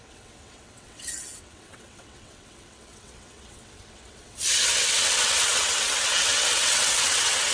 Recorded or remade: remade